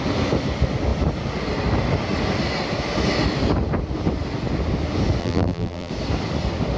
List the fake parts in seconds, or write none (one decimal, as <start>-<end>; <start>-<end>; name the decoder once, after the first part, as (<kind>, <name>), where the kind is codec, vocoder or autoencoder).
5.2-5.9 (vocoder, BigVGAN v2)